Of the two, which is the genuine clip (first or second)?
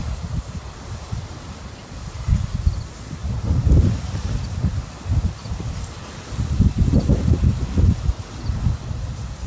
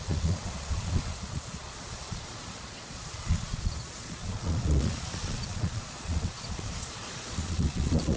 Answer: first